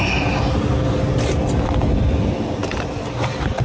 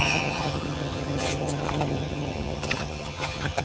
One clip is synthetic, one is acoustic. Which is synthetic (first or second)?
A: second